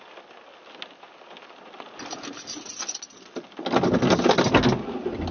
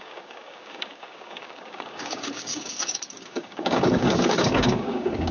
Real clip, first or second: first